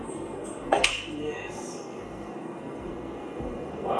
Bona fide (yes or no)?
no